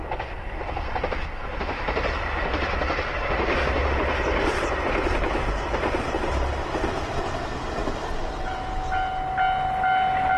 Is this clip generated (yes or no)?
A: no